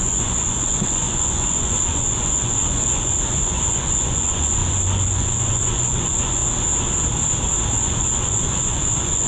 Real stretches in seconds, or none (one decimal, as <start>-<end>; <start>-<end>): 6.4-7.7